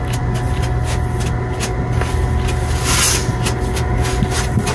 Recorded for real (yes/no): yes